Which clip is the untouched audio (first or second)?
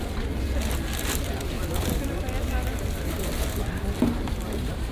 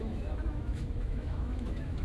first